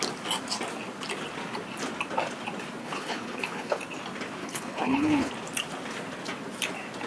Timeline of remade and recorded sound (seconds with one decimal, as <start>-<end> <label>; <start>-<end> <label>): 0.0-2.8 recorded; 2.8-3.8 remade; 3.8-4.4 recorded; 4.4-5.3 remade; 5.3-7.1 recorded